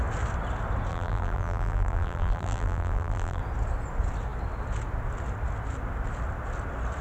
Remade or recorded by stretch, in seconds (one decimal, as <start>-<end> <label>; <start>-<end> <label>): 0.0-0.9 recorded; 0.9-3.4 remade; 3.4-7.0 recorded